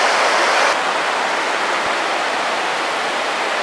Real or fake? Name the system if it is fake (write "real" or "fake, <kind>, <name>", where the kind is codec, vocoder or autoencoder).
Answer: real